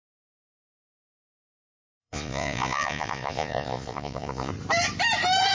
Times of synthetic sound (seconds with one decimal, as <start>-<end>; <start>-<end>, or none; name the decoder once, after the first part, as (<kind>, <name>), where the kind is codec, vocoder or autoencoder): 2.0-4.5 (vocoder, Vocos)